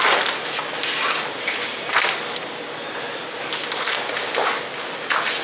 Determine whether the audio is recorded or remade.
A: recorded